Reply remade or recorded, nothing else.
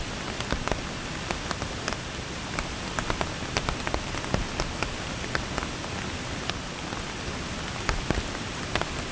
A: recorded